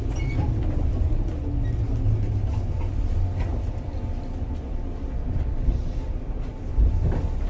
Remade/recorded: recorded